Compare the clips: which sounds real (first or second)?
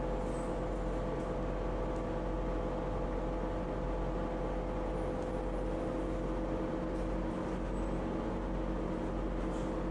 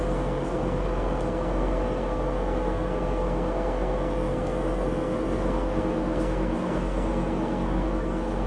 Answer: first